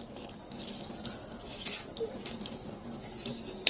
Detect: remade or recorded recorded